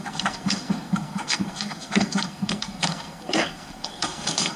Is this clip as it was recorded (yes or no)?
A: no